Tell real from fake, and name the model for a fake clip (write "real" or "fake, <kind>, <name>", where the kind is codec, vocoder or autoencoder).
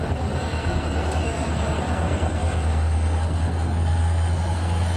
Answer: fake, codec, SNAC